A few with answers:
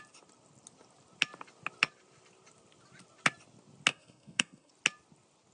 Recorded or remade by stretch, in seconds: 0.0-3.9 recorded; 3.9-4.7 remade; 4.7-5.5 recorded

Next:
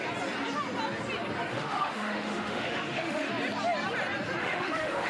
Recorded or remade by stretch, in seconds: 0.0-1.5 recorded; 1.5-3.3 remade; 3.3-4.4 recorded; 4.4-5.1 remade